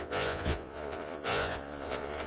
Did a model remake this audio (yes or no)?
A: yes